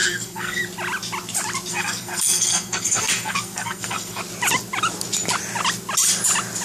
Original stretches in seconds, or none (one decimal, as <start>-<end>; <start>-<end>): 0.6-1.7; 4.2-6.6